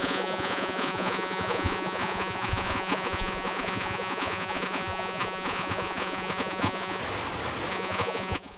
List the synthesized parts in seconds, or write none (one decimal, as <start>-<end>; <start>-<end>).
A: 0.0-7.0; 7.7-8.6